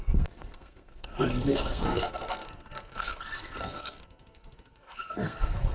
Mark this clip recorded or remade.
remade